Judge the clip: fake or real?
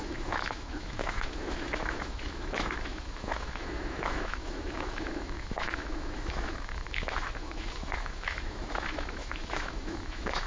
fake